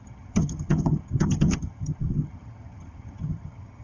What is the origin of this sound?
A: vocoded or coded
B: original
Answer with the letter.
A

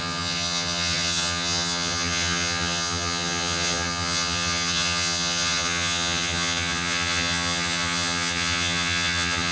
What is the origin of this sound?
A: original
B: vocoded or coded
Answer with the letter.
B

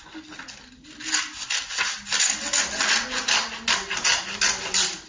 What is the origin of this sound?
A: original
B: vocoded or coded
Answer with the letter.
A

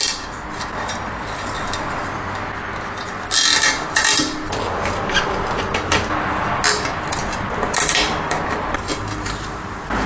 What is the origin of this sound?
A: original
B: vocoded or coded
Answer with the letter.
A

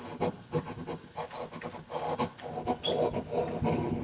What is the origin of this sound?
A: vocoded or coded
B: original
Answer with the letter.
B